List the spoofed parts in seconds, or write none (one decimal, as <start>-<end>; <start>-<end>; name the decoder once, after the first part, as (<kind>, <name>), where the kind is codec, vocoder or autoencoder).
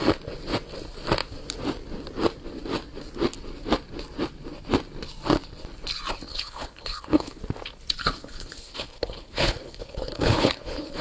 6.3-7.4 (codec, HILCodec); 8.2-11.0